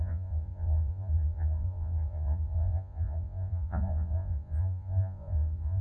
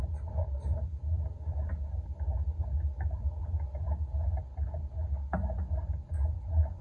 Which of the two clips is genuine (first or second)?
second